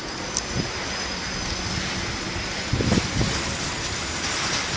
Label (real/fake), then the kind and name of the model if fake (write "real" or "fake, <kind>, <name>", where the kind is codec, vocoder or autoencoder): real